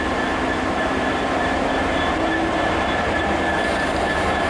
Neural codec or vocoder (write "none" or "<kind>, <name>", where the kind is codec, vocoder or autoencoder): vocoder, BigVGAN v2